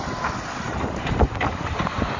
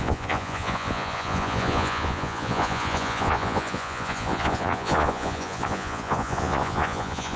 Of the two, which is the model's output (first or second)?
second